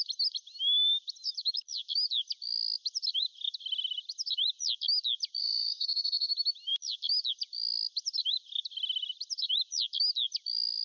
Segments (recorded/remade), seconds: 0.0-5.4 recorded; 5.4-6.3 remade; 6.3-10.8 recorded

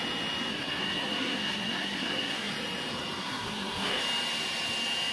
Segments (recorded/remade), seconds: 0.0-0.5 recorded; 0.5-2.5 remade; 2.5-3.2 recorded; 3.2-4.0 remade; 4.0-5.1 recorded

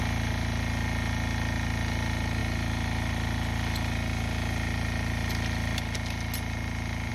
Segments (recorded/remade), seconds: 0.0-7.1 recorded

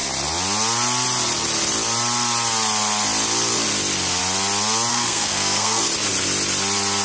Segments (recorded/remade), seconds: 0.0-4.9 recorded; 4.9-5.8 remade; 5.8-7.0 recorded

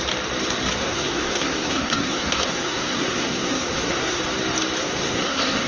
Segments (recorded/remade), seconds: 0.0-0.8 recorded; 0.8-4.2 remade; 4.2-4.8 recorded; 4.8-5.7 remade

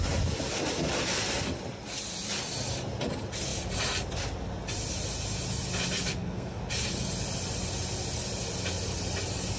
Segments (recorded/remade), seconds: 0.0-6.1 recorded; 6.1-6.6 remade; 6.6-9.6 recorded